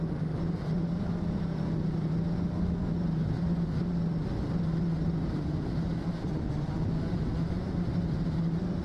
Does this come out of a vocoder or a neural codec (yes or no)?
no